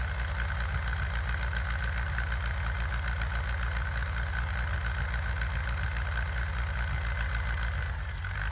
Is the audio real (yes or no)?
yes